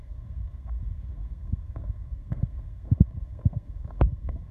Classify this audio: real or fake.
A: fake